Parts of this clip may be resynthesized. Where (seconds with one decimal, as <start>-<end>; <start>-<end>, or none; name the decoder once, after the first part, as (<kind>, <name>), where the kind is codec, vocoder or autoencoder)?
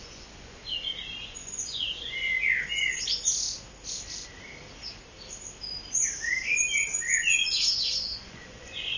0.0-0.6 (vocoder, Vocos); 1.2-2.3; 7.1-9.0